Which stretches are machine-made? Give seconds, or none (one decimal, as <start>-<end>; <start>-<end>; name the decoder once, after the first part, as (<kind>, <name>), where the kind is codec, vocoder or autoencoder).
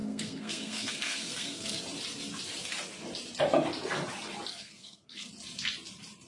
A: 0.0-1.8 (codec, SNAC); 4.5-5.3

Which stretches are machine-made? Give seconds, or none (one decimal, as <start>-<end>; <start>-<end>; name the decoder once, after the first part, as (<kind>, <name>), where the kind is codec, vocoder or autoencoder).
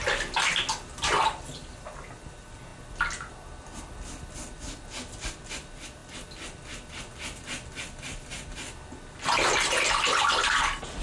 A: none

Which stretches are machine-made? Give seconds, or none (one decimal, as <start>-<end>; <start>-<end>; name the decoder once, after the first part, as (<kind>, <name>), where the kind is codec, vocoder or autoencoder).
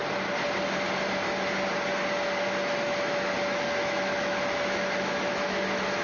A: 2.1-6.0 (autoencoder, DAC-VAE)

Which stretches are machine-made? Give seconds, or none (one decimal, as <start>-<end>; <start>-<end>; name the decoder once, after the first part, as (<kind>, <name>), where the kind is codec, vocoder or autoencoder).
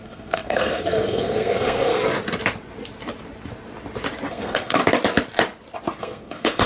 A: 0.0-2.0 (codec, SNAC); 4.3-4.8; 6.0-6.7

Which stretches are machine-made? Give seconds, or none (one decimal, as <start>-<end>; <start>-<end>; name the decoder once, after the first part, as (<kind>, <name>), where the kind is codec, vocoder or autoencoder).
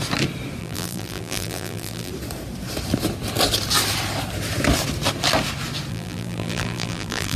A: 0.6-2.1 (vocoder, BigVGAN v2); 5.9-7.4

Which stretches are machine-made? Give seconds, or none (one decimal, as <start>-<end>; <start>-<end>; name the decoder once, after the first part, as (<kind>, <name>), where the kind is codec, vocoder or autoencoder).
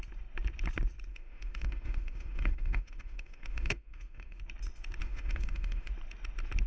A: 1.1-4.4 (autoencoder, DAC-VAE); 5.0-5.9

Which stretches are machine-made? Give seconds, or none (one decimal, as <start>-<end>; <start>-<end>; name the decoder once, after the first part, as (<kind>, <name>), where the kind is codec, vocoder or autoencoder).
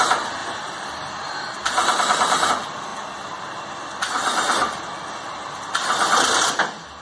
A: 0.4-2.5 (vocoder, BigVGAN v2)